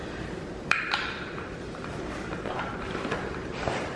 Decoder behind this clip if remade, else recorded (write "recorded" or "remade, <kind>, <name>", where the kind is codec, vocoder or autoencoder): remade, vocoder, BigVGAN v2